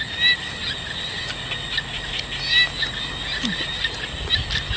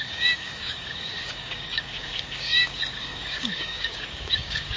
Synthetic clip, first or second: second